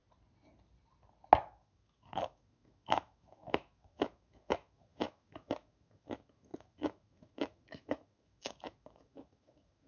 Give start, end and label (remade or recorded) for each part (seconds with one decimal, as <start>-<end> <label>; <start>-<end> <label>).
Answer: 0.0-1.4 recorded; 1.4-9.9 remade